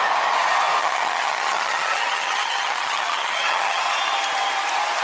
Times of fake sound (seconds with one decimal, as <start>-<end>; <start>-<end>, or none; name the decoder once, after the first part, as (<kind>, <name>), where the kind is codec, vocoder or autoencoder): 0.8-3.8 (vocoder, HiFi-GAN)